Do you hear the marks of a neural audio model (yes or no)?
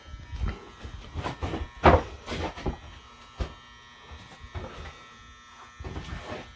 no